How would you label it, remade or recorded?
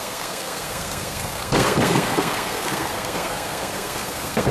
remade